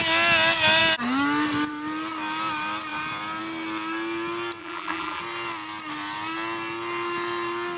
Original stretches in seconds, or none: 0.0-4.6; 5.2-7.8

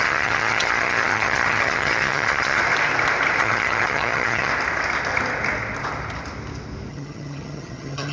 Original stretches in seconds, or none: 2.6-3.4; 4.5-6.9

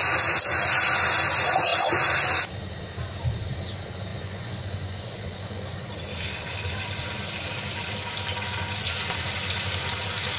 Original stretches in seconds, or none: 0.0-4.1; 5.9-10.4

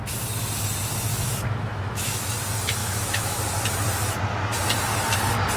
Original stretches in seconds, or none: 0.0-1.1; 2.3-2.8; 3.4-5.6